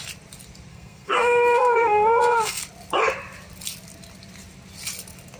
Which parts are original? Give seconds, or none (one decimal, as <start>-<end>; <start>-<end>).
0.0-0.7; 2.6-5.4